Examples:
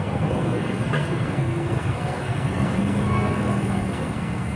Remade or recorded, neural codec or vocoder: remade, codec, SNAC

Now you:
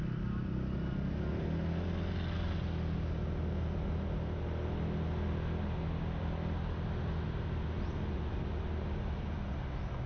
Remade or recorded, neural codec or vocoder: recorded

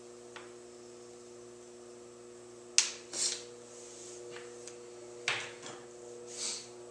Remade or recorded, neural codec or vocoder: recorded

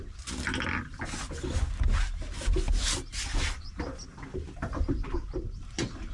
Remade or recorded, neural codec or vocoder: recorded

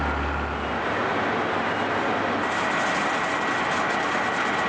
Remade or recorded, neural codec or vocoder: recorded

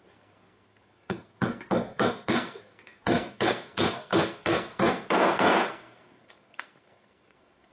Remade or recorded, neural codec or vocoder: remade, codec, SNAC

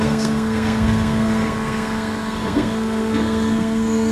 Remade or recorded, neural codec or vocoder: remade, codec, SNAC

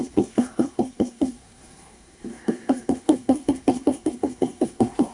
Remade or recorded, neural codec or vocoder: remade, codec, SNAC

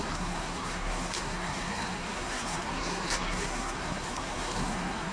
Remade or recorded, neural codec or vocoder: remade, codec, SNAC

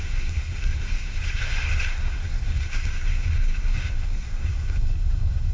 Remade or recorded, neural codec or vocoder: remade, codec, SNAC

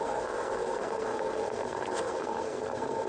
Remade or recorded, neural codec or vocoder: remade, codec, SNAC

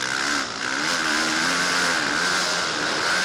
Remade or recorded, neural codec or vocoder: recorded